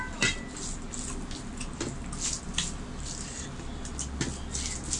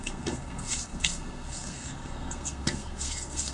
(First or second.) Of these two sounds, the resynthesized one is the second